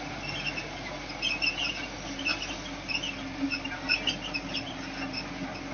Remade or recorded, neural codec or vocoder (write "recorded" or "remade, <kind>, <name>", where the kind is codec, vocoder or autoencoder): recorded